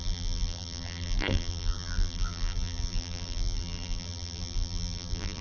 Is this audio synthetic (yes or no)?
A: yes